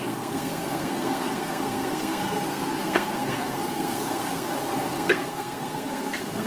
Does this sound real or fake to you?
fake